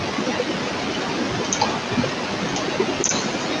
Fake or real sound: real